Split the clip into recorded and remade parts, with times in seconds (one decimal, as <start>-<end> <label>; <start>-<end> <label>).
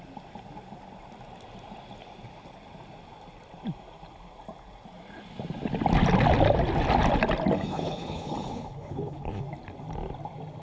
0.0-7.7 recorded; 7.7-9.4 remade; 9.4-10.6 recorded